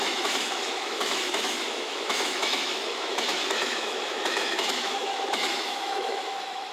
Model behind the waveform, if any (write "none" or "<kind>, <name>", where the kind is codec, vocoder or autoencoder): autoencoder, DAC-VAE